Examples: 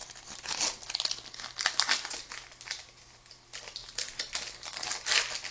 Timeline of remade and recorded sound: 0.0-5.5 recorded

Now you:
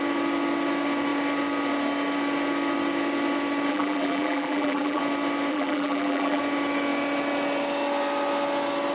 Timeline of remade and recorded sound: 0.0-3.7 recorded; 3.7-5.0 remade; 5.0-5.5 recorded; 5.5-6.4 remade; 6.4-8.9 recorded

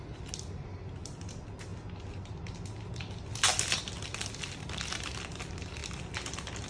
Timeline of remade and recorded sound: 0.0-6.7 recorded

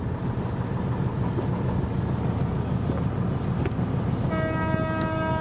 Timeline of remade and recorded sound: 0.0-5.4 recorded

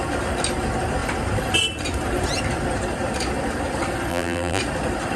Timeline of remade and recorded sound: 0.0-4.1 recorded; 4.1-4.6 remade; 4.6-5.2 recorded